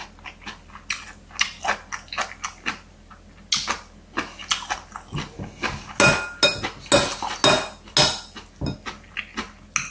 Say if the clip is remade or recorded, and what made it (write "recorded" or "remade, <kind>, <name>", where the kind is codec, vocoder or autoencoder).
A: recorded